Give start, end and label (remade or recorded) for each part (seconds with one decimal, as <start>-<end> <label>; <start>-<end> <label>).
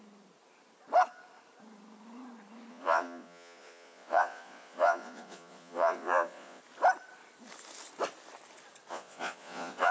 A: 0.0-2.7 recorded; 2.7-6.6 remade; 6.6-8.9 recorded; 8.9-9.9 remade